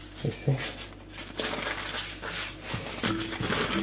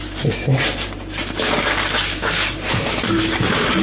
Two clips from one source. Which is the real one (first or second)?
first